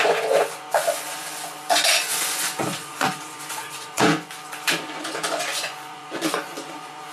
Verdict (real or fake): fake